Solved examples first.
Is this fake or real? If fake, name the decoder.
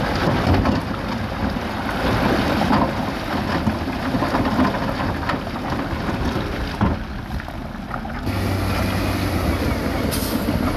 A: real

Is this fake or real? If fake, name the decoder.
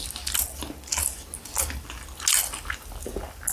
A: real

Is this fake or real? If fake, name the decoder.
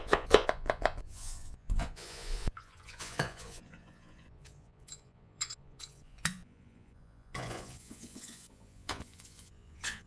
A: fake, vocoder, Vocos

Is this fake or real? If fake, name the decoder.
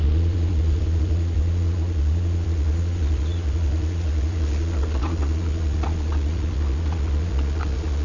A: fake, vocoder, Vocos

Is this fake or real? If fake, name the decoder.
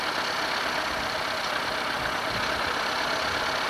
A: real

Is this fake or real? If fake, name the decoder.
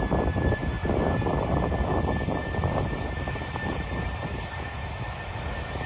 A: real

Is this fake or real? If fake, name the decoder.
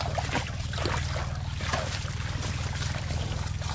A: real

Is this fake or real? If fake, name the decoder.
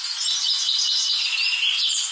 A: real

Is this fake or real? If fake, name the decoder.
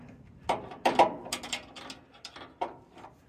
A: real